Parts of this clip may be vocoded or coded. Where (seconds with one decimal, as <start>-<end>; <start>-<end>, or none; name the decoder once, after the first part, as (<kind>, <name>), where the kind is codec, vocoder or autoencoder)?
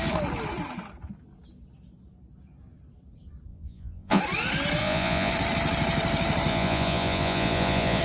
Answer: 3.5-4.2 (vocoder, Vocos); 4.8-5.3; 6.5-8.0